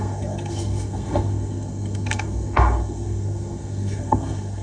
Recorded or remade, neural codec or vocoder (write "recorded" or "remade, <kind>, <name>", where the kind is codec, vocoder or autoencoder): remade, codec, SNAC